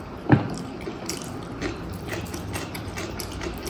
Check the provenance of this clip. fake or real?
fake